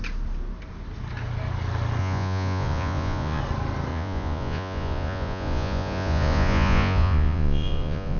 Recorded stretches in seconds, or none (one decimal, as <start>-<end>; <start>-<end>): 0.0-2.0; 3.4-3.9